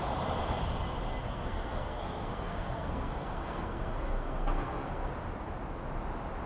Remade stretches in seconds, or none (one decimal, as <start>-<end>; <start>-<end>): 1.2-5.1